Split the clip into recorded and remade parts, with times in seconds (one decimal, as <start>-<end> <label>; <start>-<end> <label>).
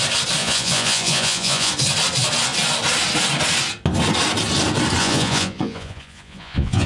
0.0-0.4 recorded; 0.4-1.7 remade; 1.7-5.0 recorded; 5.0-6.9 remade